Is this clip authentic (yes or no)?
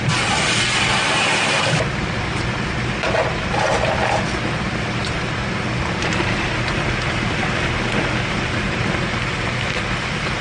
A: no